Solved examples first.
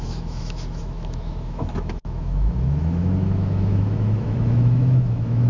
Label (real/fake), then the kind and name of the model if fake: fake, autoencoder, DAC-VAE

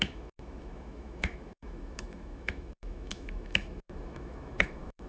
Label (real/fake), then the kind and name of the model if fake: fake, autoencoder, DAC-VAE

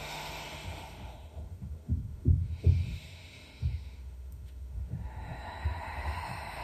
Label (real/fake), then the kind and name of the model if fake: fake, autoencoder, DAC-VAE